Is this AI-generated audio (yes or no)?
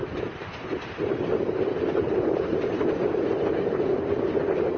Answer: no